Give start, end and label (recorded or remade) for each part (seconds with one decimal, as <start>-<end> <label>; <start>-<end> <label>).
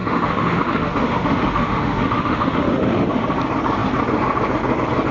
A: 0.0-3.1 remade; 3.1-5.1 recorded